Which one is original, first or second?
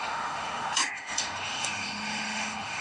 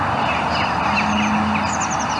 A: second